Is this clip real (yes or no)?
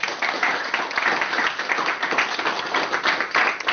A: yes